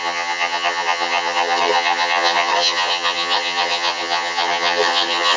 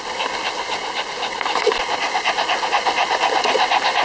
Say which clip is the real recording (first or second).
second